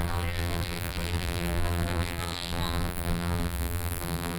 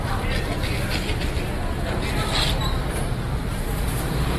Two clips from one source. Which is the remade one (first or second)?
first